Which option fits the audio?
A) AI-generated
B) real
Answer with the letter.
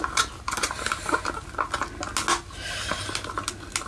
B